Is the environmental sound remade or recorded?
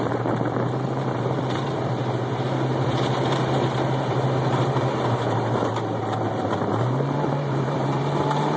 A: remade